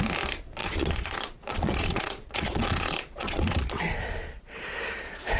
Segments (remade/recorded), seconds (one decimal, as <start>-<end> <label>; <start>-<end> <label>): 0.0-0.6 recorded; 0.6-3.8 remade; 3.8-4.2 recorded; 4.2-5.4 remade